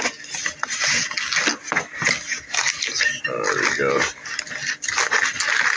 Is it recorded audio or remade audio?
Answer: recorded